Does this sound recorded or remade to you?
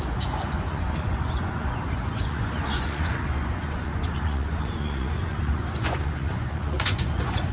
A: remade